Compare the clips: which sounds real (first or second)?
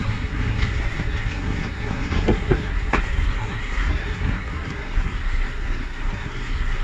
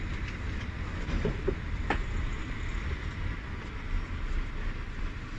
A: second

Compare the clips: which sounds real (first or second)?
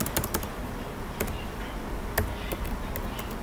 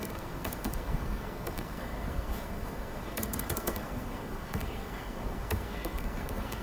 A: first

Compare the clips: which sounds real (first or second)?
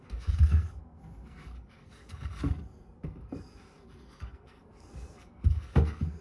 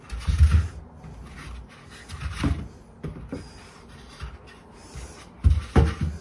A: second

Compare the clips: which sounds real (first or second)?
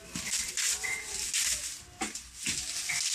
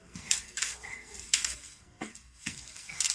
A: first